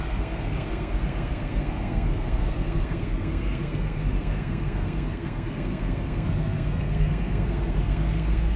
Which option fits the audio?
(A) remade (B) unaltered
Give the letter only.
A